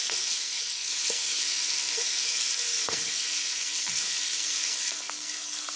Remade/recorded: remade